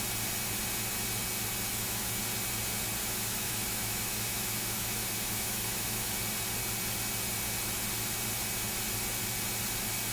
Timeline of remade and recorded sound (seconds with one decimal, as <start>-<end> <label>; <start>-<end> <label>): 0.0-1.7 recorded; 1.7-2.2 remade; 2.2-3.0 recorded; 3.0-6.2 remade; 6.2-10.1 recorded